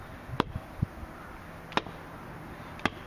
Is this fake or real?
real